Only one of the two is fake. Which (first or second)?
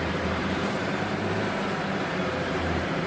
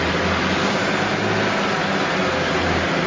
first